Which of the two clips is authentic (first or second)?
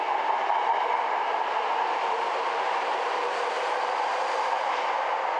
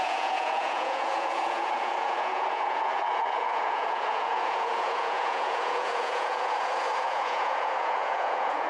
first